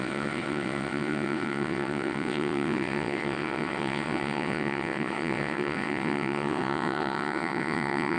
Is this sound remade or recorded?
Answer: remade